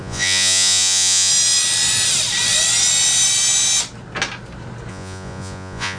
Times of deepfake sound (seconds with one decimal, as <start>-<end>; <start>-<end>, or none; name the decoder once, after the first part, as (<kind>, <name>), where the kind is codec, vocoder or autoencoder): 0.0-1.3 (vocoder, Vocos); 4.9-6.0